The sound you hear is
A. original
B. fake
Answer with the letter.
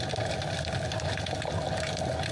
A